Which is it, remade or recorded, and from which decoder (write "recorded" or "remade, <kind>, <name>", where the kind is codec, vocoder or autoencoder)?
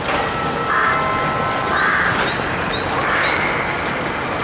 recorded